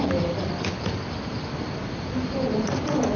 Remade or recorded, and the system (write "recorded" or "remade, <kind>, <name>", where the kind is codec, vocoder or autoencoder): recorded